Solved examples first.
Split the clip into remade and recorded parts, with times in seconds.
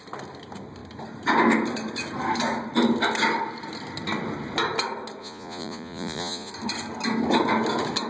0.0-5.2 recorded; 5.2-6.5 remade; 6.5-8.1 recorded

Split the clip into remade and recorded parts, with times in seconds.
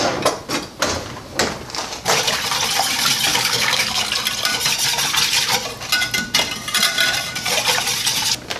0.0-3.3 recorded; 3.3-4.1 remade; 4.1-8.6 recorded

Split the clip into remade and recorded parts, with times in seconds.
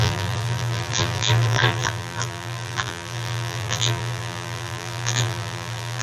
0.0-6.0 remade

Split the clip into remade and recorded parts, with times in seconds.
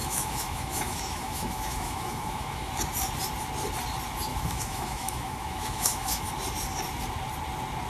0.0-2.7 remade; 2.7-4.3 recorded; 4.3-6.3 remade; 6.3-7.9 recorded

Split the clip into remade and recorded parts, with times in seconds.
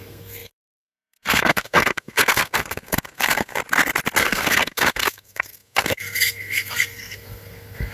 0.0-3.6 remade; 3.6-4.2 recorded; 4.2-7.9 remade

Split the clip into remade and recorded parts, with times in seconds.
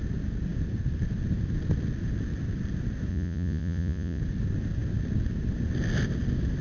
0.0-3.1 recorded; 3.1-4.2 remade; 4.2-6.6 recorded